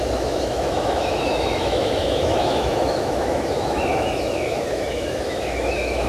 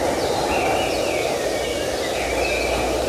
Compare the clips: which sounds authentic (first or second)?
second